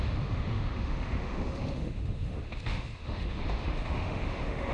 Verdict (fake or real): fake